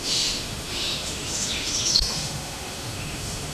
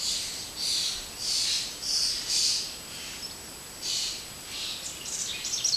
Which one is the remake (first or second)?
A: first